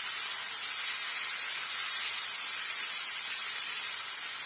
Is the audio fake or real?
real